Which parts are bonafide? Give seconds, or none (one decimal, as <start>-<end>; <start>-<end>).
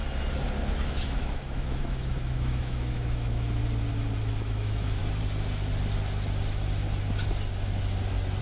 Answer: 0.0-0.9; 3.6-4.4; 5.0-8.4